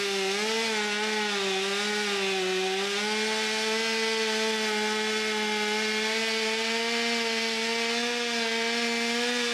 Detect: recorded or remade recorded